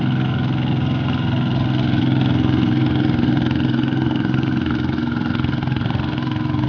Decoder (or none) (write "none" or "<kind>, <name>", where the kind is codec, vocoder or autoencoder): codec, SNAC